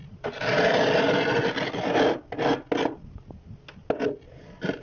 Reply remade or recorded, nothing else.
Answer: recorded